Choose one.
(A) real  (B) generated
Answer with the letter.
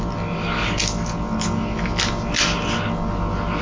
A